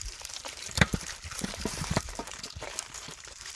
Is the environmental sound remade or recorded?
remade